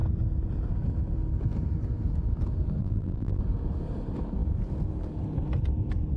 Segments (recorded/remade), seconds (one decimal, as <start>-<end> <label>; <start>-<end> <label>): 0.0-2.8 recorded; 2.8-3.4 remade; 3.4-6.2 recorded